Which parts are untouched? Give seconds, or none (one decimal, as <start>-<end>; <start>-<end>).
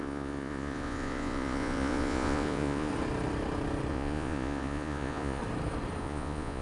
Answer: 2.9-3.9; 5.4-6.0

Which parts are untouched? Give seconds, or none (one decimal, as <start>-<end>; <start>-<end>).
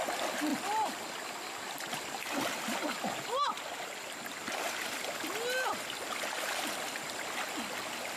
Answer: 0.0-8.2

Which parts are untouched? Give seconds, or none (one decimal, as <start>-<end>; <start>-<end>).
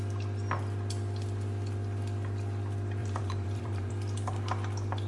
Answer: 0.0-3.0; 3.9-5.1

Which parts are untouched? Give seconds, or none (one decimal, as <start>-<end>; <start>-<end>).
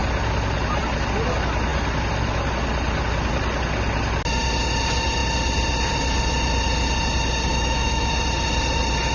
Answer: 0.0-7.5; 8.1-9.1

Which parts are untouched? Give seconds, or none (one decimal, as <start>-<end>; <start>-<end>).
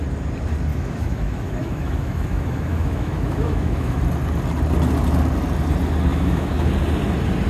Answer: 0.0-0.7; 4.0-6.1; 6.7-7.5